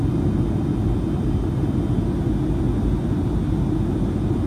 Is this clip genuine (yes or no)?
yes